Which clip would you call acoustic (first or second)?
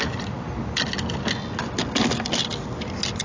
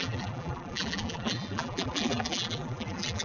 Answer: first